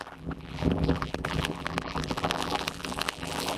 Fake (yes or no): yes